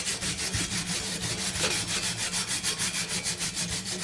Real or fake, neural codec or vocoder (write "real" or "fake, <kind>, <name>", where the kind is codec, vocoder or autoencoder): real